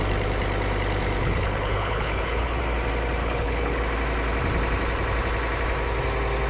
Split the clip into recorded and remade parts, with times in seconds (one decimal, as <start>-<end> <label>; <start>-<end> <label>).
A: 0.0-1.2 recorded; 1.2-2.6 remade; 2.6-3.2 recorded; 3.2-3.8 remade; 3.8-6.5 recorded